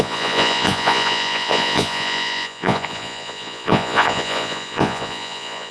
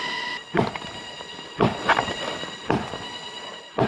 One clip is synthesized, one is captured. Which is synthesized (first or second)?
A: first